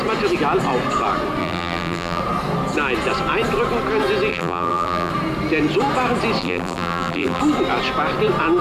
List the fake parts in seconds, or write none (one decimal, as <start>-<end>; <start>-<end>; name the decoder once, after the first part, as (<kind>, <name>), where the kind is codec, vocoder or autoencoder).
1.4-2.2 (vocoder, BigVGAN v2); 4.3-5.1; 6.4-7.4

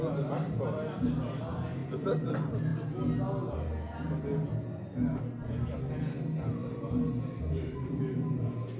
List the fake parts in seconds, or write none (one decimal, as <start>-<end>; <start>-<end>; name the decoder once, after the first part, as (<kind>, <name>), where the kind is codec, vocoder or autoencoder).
6.6-8.0 (vocoder, BigVGAN v2)

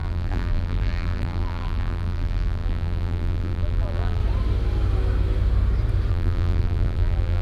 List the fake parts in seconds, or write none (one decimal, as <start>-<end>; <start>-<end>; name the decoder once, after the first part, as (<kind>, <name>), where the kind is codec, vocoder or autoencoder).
0.0-4.2 (vocoder, BigVGAN v2); 6.1-7.4

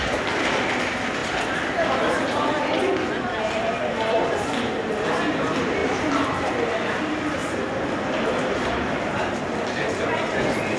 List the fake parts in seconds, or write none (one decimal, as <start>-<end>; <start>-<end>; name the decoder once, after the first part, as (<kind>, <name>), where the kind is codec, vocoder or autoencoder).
7.4-9.4 (vocoder, BigVGAN v2)

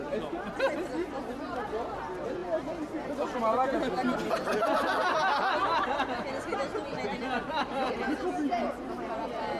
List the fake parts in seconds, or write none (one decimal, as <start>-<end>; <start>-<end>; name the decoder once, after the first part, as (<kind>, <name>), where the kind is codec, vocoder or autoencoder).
2.4-3.4 (vocoder, BigVGAN v2); 7.4-8.3

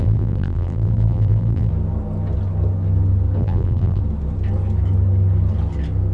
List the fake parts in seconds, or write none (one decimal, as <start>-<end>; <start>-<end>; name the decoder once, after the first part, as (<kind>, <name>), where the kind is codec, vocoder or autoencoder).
0.0-1.7 (vocoder, BigVGAN v2); 3.4-4.0